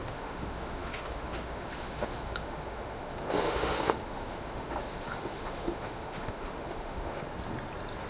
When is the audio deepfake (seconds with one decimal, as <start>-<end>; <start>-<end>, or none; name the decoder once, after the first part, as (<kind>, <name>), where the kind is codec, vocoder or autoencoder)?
0.0-7.2 (autoencoder, DAC-VAE)